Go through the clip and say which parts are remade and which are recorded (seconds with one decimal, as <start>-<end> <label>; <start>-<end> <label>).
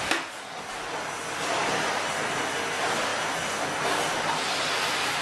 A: 0.0-5.2 recorded